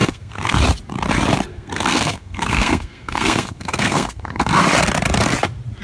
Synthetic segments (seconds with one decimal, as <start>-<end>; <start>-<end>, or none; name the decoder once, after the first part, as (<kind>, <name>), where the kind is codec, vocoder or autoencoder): 0.0-0.6 (codec, SNAC); 1.5-4.6